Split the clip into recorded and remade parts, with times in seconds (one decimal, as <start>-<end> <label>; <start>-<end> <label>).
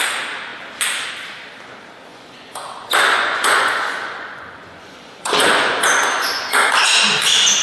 0.0-2.1 recorded; 2.1-6.7 remade; 6.7-7.6 recorded